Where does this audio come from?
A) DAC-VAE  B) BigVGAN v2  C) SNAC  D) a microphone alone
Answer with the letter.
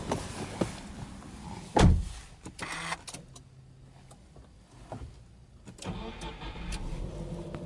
D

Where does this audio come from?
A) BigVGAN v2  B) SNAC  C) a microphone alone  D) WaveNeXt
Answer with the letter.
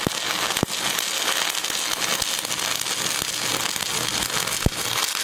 C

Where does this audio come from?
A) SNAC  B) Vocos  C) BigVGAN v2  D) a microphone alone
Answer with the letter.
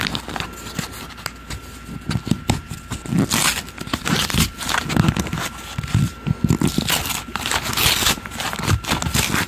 D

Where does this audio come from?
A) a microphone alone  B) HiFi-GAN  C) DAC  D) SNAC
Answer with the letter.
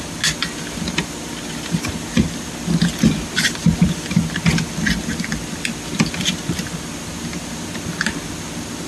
A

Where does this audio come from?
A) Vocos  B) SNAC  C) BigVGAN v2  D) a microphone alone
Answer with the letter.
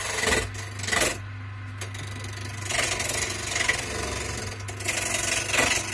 D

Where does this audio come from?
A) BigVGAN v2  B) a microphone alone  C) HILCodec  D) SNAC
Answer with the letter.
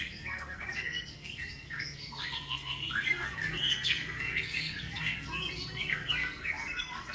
D